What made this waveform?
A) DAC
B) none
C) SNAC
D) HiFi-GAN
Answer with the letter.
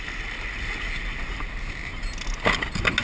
B